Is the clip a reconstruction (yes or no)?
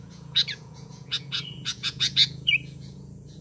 yes